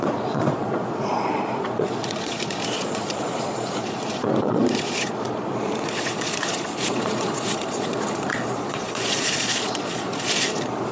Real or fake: fake